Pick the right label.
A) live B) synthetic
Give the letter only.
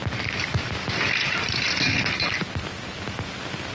A